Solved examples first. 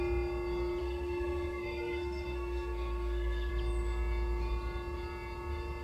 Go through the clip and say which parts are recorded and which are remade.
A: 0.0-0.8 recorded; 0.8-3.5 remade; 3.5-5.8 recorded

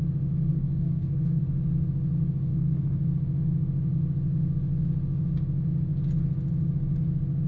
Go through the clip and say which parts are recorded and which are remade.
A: 0.0-0.5 recorded; 0.5-1.4 remade; 1.4-2.5 recorded; 2.5-3.0 remade; 3.0-7.5 recorded

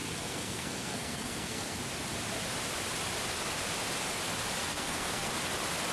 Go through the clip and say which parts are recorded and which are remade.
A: 0.0-1.8 remade; 1.8-4.6 recorded; 4.6-5.3 remade; 5.3-5.9 recorded

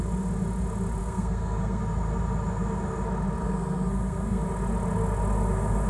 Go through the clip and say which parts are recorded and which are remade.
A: 0.0-1.0 recorded; 1.0-1.8 remade; 1.8-3.4 recorded; 3.4-4.4 remade; 4.4-5.9 recorded

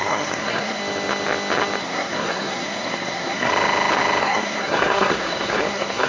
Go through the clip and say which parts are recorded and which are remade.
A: 0.0-0.8 remade; 0.8-1.8 recorded; 1.8-3.5 remade; 3.5-4.2 recorded; 4.2-6.1 remade

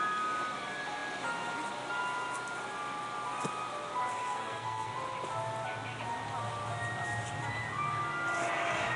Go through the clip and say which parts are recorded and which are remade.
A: 0.0-4.1 recorded; 4.1-4.9 remade; 4.9-9.0 recorded